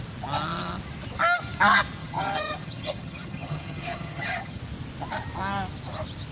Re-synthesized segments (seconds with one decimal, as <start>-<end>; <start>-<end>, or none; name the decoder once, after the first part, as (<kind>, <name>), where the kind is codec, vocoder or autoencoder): 2.0-4.6 (vocoder, HiFi-GAN)